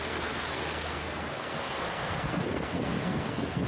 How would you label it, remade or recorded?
remade